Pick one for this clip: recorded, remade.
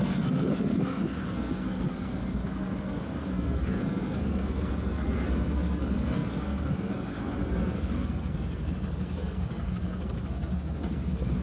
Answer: remade